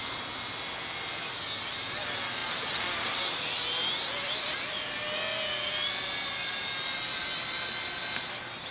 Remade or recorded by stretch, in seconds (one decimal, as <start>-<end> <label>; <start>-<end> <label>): 0.0-8.7 recorded